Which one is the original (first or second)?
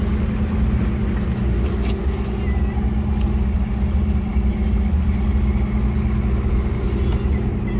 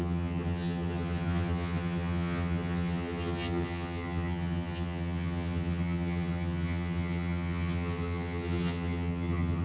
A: first